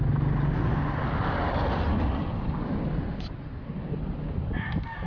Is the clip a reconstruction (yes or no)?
no